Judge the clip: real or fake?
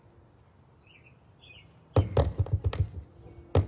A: real